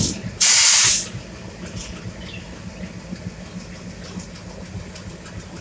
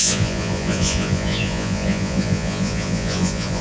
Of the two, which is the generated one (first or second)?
second